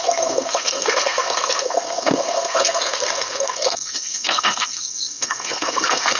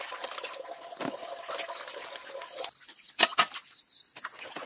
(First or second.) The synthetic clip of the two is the first